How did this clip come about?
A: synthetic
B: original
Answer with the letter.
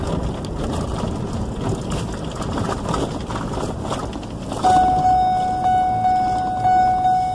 B